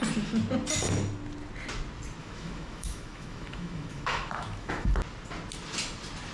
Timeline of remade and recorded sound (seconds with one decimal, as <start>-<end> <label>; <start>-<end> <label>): 0.0-2.2 recorded; 2.2-4.9 remade; 4.9-6.3 recorded

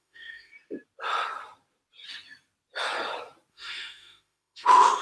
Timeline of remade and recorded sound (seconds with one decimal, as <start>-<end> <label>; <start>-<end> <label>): 0.0-0.5 remade; 0.5-3.5 recorded; 3.5-5.0 remade